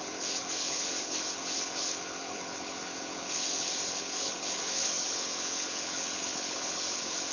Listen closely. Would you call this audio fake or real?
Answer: fake